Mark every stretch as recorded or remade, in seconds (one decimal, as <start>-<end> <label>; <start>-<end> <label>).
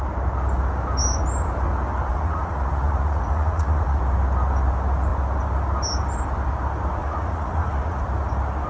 0.0-2.1 recorded; 2.1-4.0 remade; 4.0-7.0 recorded; 7.0-8.0 remade; 8.0-8.7 recorded